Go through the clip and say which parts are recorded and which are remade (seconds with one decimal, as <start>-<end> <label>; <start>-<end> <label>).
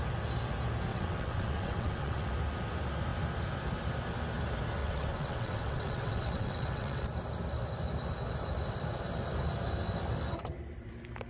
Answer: 0.0-0.9 recorded; 0.9-2.3 remade; 2.3-4.8 recorded; 4.8-7.1 remade; 7.1-11.3 recorded